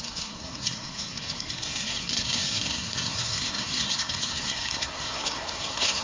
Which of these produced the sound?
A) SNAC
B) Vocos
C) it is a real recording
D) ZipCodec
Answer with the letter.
A